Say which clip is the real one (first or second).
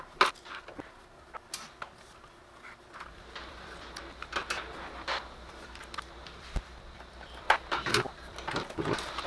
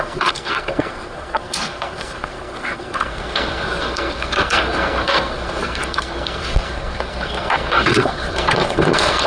first